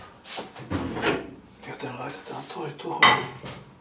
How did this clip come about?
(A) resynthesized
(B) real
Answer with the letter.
B